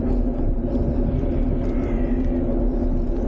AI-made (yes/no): no